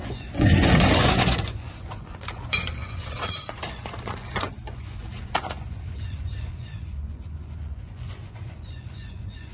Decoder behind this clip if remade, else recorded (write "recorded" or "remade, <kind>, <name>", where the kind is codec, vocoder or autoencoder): remade, vocoder, Vocos